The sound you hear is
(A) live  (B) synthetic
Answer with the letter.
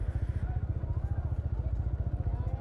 A